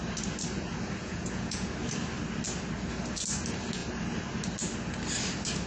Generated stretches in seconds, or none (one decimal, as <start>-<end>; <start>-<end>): 1.0-1.7